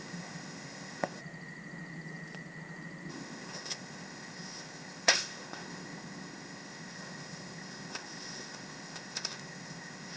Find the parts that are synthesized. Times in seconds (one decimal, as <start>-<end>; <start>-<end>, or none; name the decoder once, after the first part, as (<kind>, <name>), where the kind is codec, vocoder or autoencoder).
0.0-1.2 (codec, ZipCodec); 3.1-10.2